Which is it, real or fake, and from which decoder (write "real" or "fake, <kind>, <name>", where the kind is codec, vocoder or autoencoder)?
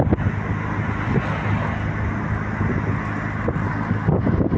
real